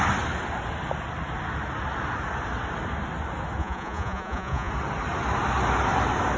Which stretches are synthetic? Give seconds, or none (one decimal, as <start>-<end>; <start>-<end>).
3.6-4.7